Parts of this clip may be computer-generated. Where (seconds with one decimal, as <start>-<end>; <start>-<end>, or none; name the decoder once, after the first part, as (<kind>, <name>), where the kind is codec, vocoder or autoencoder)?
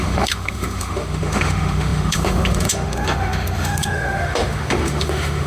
0.0-5.5 (autoencoder, DAC-VAE)